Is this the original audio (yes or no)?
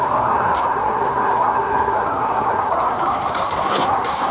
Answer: no